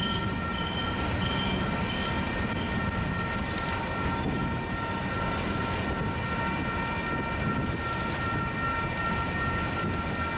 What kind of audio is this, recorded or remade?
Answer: recorded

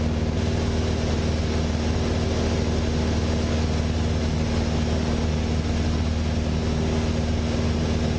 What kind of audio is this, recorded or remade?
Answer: recorded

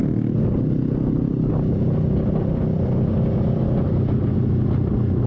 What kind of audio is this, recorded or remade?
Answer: recorded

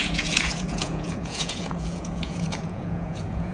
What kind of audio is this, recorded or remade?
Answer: remade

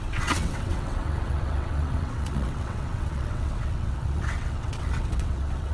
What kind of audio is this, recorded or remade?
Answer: remade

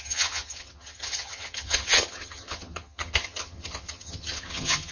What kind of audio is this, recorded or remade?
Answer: remade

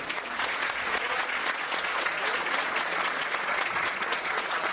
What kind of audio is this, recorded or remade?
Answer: remade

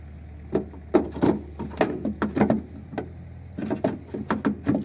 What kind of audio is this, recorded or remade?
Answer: recorded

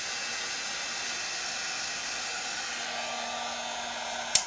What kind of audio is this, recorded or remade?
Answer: recorded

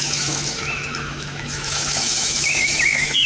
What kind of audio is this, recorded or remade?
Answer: remade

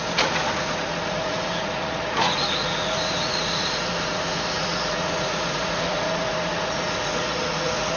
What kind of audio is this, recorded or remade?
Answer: remade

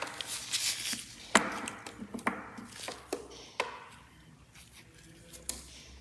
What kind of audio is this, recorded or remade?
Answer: recorded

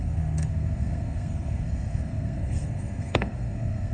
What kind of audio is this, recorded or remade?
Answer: remade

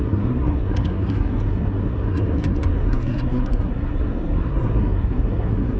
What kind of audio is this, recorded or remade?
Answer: remade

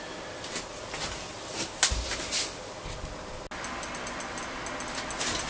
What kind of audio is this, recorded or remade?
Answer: recorded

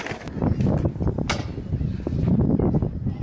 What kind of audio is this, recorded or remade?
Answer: recorded